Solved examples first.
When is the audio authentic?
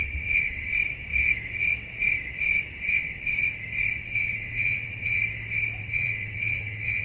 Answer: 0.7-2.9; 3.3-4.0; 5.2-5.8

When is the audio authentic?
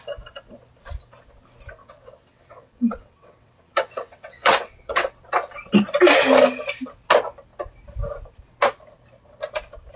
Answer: 0.0-1.8; 5.1-10.0